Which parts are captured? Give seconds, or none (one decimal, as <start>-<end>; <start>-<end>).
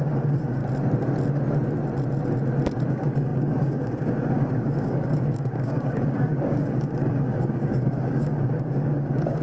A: 0.6-2.9